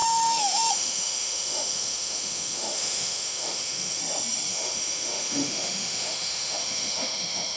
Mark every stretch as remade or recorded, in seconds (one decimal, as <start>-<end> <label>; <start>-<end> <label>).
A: 0.0-4.0 remade; 4.0-4.5 recorded; 4.5-7.6 remade